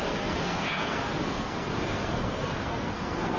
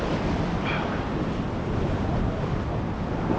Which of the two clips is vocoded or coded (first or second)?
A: first